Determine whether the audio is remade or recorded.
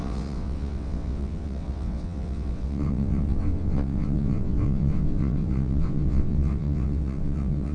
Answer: remade